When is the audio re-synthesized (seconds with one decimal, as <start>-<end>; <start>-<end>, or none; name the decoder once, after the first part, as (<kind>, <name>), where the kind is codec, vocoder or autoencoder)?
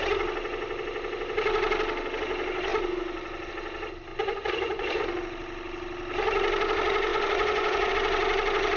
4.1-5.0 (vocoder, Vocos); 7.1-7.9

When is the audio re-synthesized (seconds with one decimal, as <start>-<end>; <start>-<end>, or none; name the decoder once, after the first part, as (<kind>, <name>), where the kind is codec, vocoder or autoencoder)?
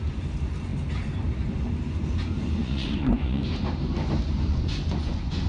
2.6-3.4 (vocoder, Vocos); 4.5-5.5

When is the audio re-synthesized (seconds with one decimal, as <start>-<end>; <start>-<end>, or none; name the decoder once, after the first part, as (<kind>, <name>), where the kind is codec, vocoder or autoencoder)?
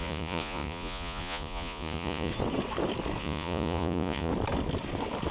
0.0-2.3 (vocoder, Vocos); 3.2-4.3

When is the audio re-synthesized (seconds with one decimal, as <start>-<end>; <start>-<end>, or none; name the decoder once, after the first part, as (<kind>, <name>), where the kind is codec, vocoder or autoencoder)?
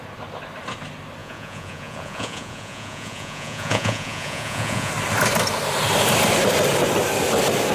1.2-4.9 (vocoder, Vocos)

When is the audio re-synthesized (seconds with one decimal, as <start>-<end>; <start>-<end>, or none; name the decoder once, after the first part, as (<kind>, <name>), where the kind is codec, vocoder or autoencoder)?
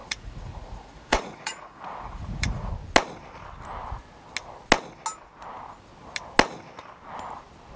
0.0-2.7 (vocoder, Vocos)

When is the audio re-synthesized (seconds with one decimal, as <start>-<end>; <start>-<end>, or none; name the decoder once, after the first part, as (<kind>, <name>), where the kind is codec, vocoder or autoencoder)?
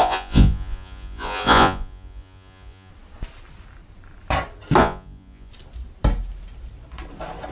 0.0-2.9 (vocoder, Vocos); 4.8-5.5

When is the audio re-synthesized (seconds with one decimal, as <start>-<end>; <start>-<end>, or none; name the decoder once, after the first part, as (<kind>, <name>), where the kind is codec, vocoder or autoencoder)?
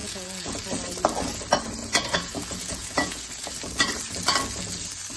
0.0-0.6 (vocoder, Vocos); 1.8-3.5